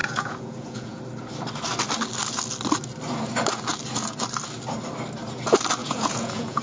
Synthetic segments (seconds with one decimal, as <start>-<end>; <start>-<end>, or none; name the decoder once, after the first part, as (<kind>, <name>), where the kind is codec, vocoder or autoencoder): 0.0-1.0 (vocoder, Vocos); 5.8-6.6